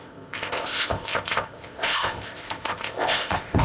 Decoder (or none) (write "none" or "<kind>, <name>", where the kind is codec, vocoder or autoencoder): codec, ZipCodec